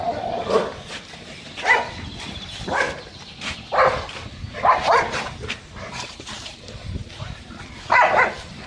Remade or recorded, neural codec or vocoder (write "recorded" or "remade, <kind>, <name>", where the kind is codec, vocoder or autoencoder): remade, vocoder, BigVGAN v2